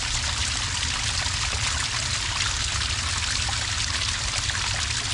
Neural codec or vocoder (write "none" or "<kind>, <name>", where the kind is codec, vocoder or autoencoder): none